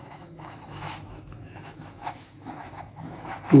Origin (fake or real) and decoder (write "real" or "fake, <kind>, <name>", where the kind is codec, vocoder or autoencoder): fake, autoencoder, DAC-VAE